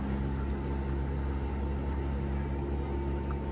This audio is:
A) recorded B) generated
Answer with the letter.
A